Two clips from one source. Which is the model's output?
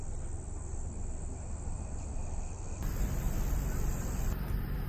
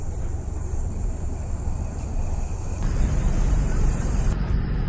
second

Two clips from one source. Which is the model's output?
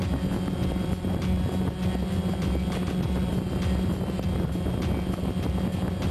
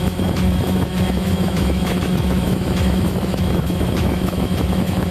second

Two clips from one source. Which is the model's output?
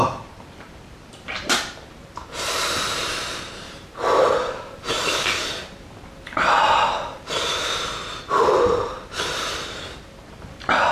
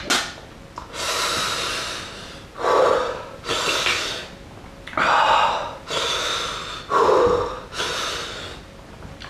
first